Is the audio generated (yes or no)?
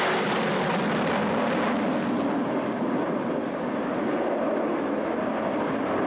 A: no